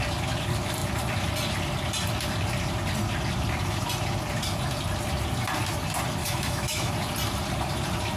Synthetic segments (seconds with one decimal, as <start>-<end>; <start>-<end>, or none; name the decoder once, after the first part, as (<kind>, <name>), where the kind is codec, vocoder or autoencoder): 6.2-6.9 (autoencoder, DAC-VAE)

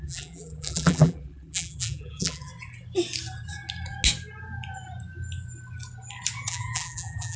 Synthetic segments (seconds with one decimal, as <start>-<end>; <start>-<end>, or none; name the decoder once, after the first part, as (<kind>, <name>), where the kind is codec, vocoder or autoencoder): 0.0-2.5 (vocoder, BigVGAN v2); 6.5-7.4